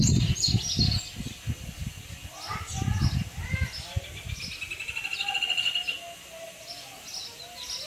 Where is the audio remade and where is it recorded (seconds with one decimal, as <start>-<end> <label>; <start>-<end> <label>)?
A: 0.0-7.9 recorded